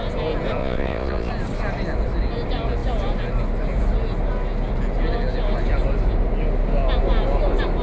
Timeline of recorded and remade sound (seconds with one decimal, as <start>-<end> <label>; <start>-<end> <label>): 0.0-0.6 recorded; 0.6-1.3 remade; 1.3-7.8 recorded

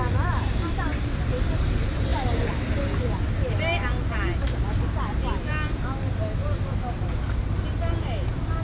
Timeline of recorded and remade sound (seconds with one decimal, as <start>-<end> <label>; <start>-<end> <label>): 0.0-8.6 recorded

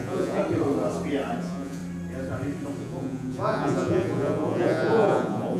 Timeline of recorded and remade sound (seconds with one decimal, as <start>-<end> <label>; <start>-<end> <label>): 0.0-0.4 remade; 0.4-1.4 recorded; 1.4-1.8 remade; 1.8-2.8 recorded; 2.8-5.6 remade

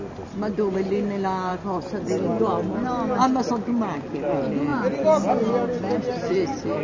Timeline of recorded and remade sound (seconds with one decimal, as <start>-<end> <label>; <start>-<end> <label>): 0.0-6.8 recorded